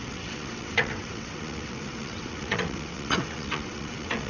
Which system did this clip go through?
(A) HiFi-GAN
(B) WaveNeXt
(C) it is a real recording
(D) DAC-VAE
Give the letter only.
B